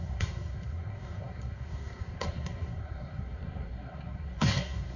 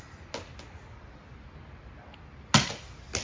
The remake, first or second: first